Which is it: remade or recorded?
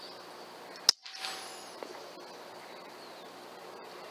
recorded